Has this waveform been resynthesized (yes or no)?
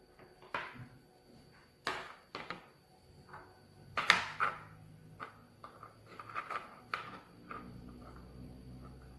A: no